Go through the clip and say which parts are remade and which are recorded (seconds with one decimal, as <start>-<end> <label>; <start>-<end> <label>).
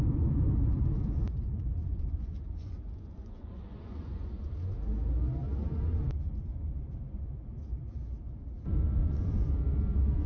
0.0-1.8 recorded; 1.8-4.3 remade; 4.3-9.0 recorded; 9.0-9.5 remade; 9.5-10.3 recorded